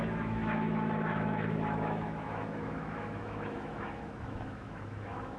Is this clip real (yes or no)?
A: no